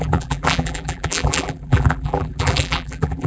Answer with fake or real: fake